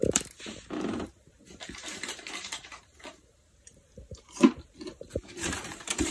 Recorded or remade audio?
remade